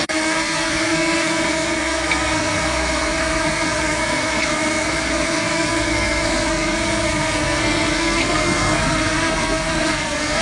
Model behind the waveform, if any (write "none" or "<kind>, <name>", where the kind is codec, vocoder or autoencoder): codec, SNAC